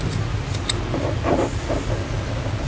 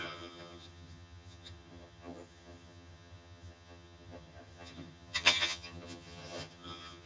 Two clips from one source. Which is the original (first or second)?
first